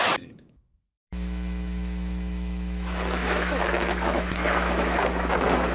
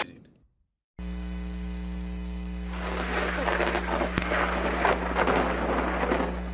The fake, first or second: first